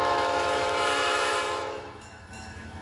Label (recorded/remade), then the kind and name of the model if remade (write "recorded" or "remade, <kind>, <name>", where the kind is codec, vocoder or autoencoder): remade, autoencoder, DAC-VAE